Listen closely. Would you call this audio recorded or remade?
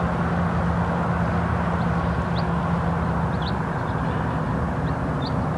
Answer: recorded